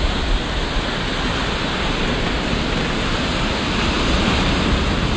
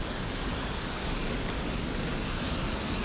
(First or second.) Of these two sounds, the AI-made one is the second